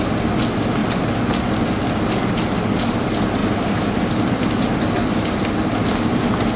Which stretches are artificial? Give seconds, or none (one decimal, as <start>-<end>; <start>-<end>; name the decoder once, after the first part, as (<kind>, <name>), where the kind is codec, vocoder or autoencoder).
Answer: 0.8-1.5 (vocoder, BigVGAN v2)